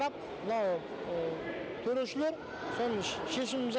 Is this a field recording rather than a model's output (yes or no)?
yes